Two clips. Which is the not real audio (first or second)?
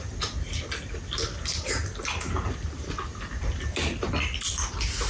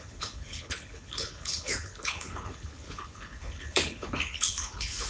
second